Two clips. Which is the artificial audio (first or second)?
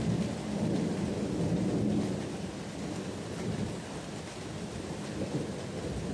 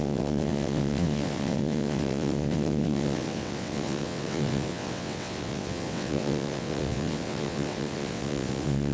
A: second